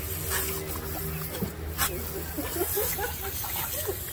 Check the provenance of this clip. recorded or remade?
recorded